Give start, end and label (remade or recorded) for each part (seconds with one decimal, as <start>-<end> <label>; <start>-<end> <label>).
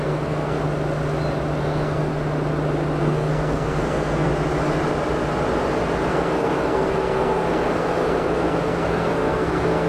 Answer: 0.0-0.6 remade; 0.6-1.6 recorded; 1.6-2.1 remade; 2.1-3.0 recorded; 3.0-4.3 remade; 4.3-6.1 recorded; 6.1-9.9 remade